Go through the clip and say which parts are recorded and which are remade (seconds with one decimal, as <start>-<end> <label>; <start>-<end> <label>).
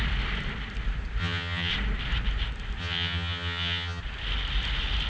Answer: 0.0-1.2 recorded; 1.2-1.7 remade; 1.7-2.8 recorded; 2.8-4.0 remade; 4.0-5.1 recorded